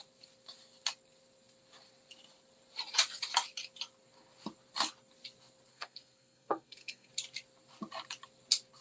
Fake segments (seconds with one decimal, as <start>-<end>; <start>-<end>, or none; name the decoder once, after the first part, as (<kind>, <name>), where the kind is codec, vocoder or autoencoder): 5.7-7.1 (codec, SNAC)